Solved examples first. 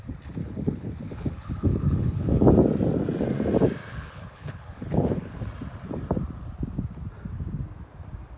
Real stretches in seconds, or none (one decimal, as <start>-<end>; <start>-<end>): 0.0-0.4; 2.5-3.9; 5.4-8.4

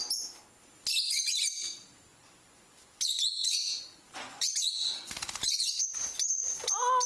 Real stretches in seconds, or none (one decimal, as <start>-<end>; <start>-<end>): 0.0-2.1; 5.8-7.1

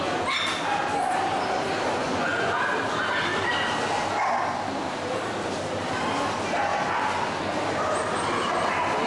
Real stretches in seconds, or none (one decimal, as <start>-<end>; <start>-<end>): 0.0-2.0; 2.6-9.1

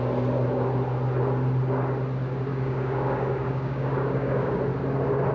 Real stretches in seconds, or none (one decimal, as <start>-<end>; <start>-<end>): 0.0-2.5; 4.6-5.3

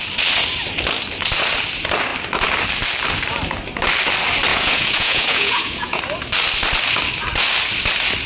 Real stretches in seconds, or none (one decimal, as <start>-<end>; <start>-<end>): 0.0-4.5; 6.0-8.3

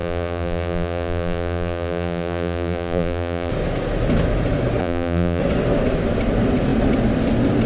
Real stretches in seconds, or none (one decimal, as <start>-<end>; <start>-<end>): 3.5-4.8; 5.4-7.7

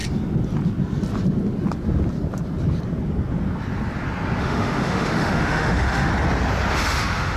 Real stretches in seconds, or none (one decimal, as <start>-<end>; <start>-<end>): 0.0-4.4; 6.1-6.7